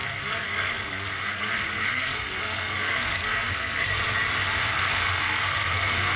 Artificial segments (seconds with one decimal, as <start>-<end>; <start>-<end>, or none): 0.0-4.0; 4.7-6.2